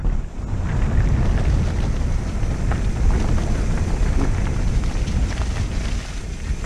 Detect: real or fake real